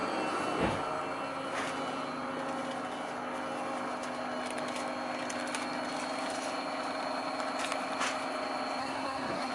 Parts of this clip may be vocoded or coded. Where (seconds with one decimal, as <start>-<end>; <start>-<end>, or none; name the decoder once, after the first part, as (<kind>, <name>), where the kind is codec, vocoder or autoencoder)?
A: 8.8-9.5 (codec, SNAC)